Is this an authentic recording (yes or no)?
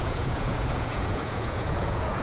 no